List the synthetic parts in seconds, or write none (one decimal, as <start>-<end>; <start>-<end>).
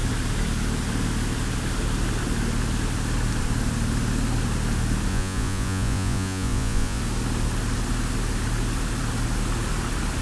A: 5.1-7.0